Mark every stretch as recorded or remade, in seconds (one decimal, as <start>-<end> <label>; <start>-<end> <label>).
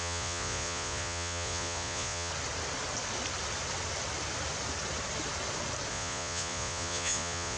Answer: 0.0-2.3 remade; 2.3-5.9 recorded; 5.9-7.6 remade